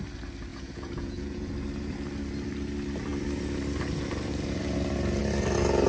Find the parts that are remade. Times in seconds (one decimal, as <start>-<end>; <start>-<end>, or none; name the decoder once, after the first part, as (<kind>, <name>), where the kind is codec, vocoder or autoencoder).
0.5-1.5 (vocoder, Vocos)